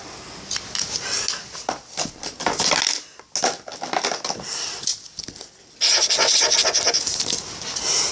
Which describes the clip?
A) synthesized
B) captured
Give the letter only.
B